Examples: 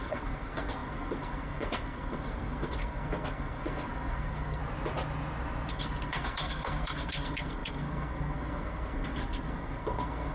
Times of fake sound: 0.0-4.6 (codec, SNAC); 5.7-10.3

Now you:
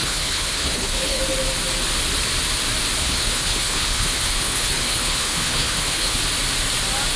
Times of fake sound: 0.0-1.2 (codec, HILCodec); 3.0-6.2

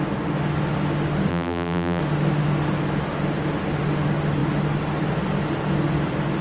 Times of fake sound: 1.3-2.0 (vocoder, BigVGAN v2)

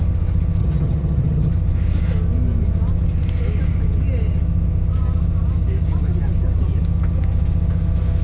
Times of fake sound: 0.6-1.5 (vocoder, HiFi-GAN)

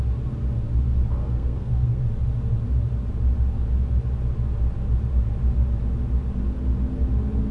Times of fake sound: 1.2-2.0 (codec, SNAC)

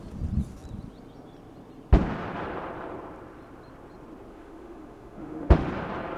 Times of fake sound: 4.3-5.7 (autoencoder, DAC-VAE)